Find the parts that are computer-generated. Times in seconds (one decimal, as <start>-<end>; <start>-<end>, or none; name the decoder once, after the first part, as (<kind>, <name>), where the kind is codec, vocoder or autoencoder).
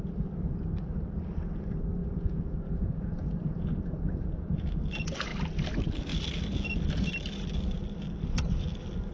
2.0-4.8 (vocoder, Vocos)